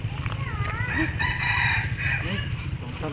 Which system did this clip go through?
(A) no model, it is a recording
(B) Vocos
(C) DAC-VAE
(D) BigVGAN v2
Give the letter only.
A